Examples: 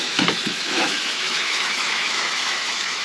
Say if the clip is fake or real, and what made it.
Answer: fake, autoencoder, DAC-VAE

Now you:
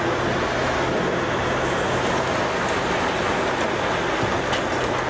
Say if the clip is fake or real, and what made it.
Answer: real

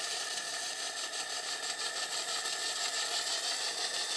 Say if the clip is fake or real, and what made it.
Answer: real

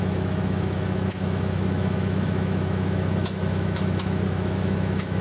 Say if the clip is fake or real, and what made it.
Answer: fake, autoencoder, DAC-VAE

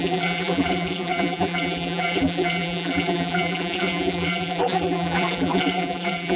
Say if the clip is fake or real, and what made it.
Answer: fake, vocoder, BigVGAN v2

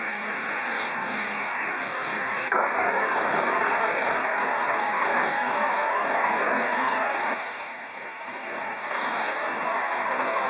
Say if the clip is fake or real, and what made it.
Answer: fake, codec, DAC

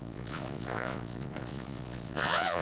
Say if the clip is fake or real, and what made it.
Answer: fake, vocoder, Vocos